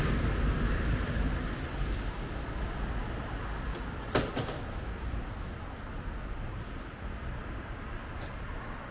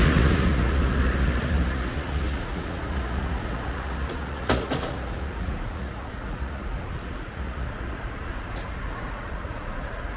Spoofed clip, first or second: second